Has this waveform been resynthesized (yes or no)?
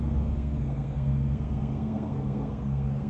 yes